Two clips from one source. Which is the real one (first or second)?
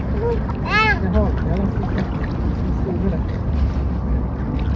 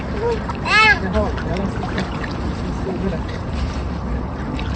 first